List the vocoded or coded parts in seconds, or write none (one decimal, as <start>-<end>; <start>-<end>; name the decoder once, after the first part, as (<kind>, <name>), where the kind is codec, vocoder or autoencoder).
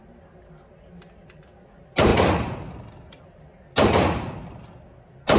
none